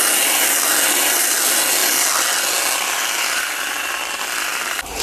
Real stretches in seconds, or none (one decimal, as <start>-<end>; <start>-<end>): 0.0-5.0